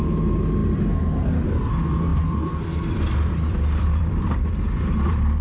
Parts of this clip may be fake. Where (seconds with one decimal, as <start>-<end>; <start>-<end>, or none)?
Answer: 0.6-1.7; 2.1-4.6